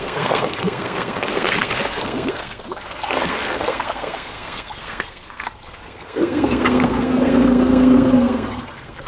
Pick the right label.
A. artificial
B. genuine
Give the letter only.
A